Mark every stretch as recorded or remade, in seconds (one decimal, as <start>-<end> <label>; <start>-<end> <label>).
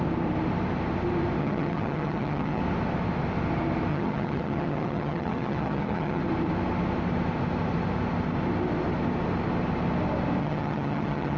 0.0-1.4 recorded; 1.4-2.6 remade; 2.6-3.9 recorded; 3.9-6.2 remade; 6.2-10.4 recorded; 10.4-11.4 remade